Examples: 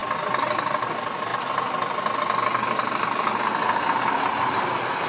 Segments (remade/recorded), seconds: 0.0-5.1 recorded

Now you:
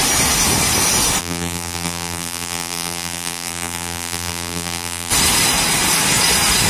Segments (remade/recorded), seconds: 0.0-1.2 recorded; 1.2-5.1 remade; 5.1-6.7 recorded

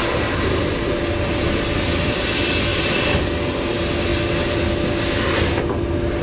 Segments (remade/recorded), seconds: 0.0-2.7 recorded; 2.7-3.2 remade; 3.2-6.2 recorded

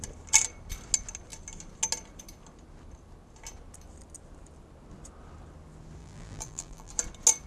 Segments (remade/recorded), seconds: 0.0-6.0 recorded; 6.0-6.9 remade; 6.9-7.5 recorded